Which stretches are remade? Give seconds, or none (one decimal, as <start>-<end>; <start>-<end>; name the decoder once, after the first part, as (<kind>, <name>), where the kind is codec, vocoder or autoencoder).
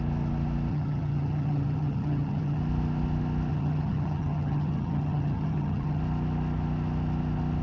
0.7-2.6 (vocoder, HiFi-GAN); 3.5-6.0